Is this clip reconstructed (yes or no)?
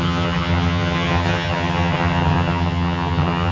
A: yes